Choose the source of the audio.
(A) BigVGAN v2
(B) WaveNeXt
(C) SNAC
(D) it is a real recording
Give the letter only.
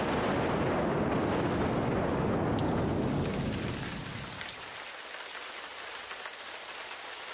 D